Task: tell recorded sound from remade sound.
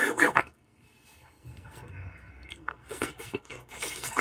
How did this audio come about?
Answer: remade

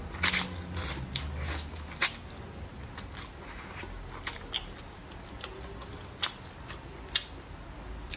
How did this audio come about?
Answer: recorded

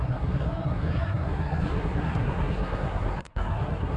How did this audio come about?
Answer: remade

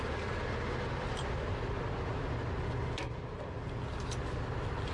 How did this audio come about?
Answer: recorded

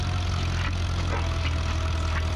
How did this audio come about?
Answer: remade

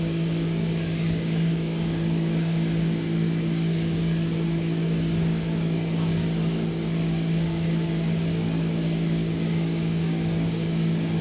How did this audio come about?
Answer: remade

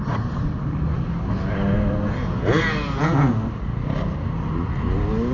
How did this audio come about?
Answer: recorded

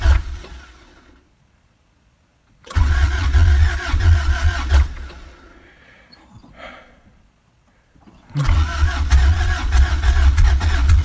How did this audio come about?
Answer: remade